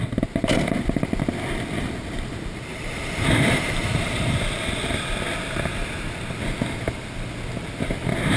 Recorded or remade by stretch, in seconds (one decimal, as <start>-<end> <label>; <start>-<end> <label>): 0.0-2.7 recorded; 2.7-4.7 remade; 4.7-8.4 recorded